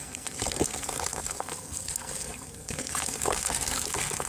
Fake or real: fake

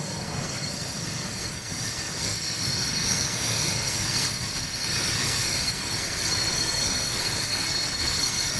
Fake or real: fake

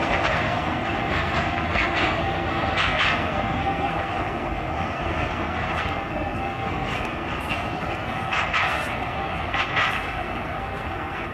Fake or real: fake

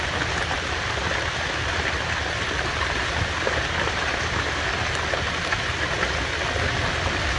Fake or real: real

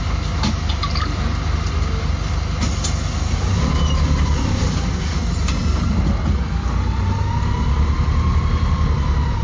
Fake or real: real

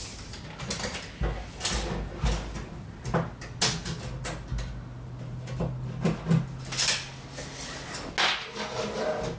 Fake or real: real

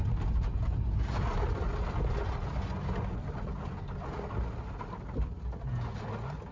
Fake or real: real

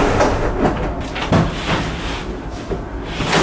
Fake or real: real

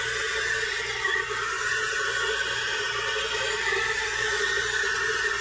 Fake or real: real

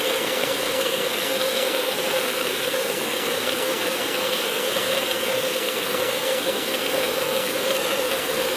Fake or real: fake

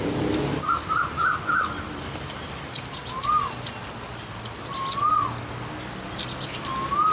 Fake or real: real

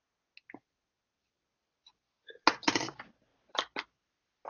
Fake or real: real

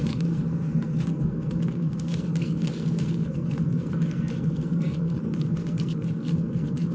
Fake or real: fake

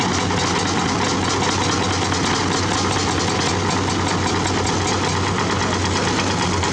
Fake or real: real